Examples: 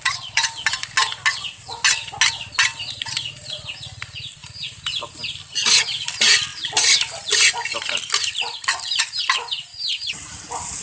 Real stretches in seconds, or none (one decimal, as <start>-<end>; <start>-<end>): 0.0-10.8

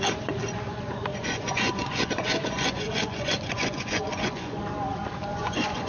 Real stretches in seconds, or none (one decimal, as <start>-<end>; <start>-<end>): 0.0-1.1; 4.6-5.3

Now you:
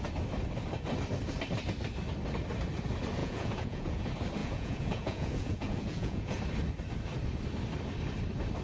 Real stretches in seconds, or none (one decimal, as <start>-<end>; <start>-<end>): 0.0-3.2; 4.0-4.4; 6.4-8.6

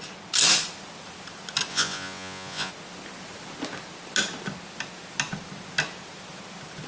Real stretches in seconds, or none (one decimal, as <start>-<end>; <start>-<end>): 0.0-1.7; 2.7-6.9

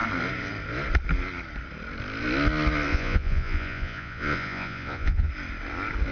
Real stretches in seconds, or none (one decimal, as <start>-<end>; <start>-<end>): 0.0-2.9; 5.3-6.1

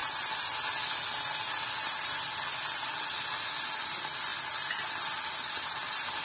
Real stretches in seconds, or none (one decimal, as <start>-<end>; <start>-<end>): 0.0-6.2